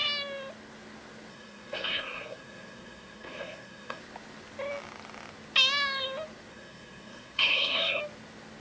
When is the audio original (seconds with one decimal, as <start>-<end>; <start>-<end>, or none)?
0.0-1.3; 4.0-6.5; 8.0-8.6

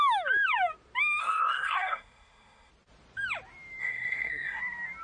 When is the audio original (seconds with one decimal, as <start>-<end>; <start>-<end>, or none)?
0.0-1.2; 2.7-3.8; 4.6-5.0